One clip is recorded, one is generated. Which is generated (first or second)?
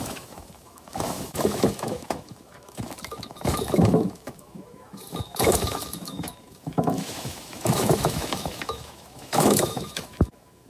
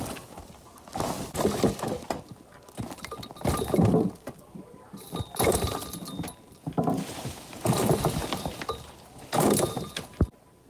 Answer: first